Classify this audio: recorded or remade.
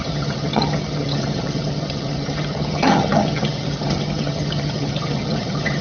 remade